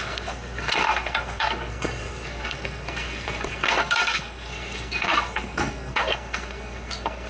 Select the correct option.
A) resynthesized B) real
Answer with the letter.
A